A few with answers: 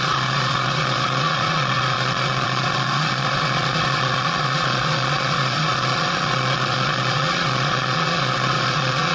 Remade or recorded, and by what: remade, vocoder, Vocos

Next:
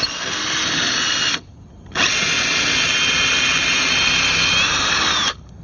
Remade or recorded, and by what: recorded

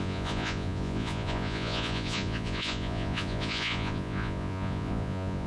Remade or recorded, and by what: remade, vocoder, Vocos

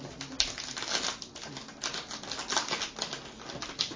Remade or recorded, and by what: recorded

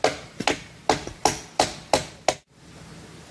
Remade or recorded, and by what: recorded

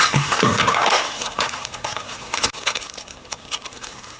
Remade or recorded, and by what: remade, codec, SNAC